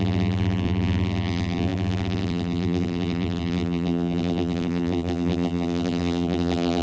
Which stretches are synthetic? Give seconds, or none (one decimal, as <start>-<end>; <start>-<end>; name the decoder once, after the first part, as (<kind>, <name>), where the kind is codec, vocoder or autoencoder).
0.0-6.8 (vocoder, BigVGAN v2)